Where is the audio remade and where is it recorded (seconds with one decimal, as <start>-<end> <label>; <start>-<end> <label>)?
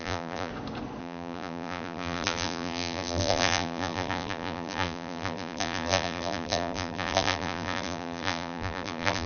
0.0-0.5 remade; 0.5-1.0 recorded; 1.0-9.3 remade